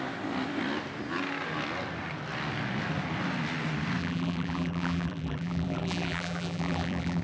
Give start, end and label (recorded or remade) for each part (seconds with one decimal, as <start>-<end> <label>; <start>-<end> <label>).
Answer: 0.0-4.0 recorded; 4.0-7.2 remade

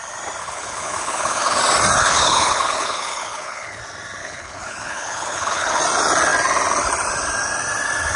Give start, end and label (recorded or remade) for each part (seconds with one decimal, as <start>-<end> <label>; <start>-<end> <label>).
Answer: 0.0-0.4 recorded; 0.4-1.6 remade; 1.6-2.0 recorded; 2.0-3.8 remade; 3.8-4.2 recorded; 4.2-5.8 remade; 5.8-8.2 recorded

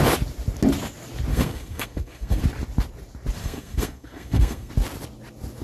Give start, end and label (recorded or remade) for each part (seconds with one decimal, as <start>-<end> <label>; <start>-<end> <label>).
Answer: 0.0-1.3 recorded; 1.3-2.4 remade; 2.4-3.4 recorded; 3.4-4.7 remade; 4.7-5.6 recorded

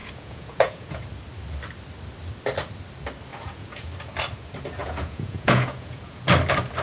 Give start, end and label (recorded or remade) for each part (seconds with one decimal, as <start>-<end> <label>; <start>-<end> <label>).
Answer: 0.0-1.0 remade; 1.0-3.3 recorded; 3.3-3.9 remade; 3.9-4.8 recorded; 4.8-6.2 remade; 6.2-6.8 recorded

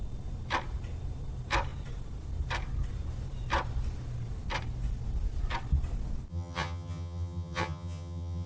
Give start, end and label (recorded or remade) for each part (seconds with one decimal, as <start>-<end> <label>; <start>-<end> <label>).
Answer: 0.0-6.3 recorded; 6.3-8.5 remade

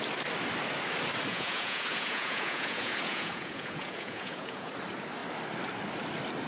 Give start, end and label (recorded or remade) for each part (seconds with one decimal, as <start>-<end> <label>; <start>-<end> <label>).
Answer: 0.0-1.3 recorded; 1.3-4.7 remade; 4.7-6.5 recorded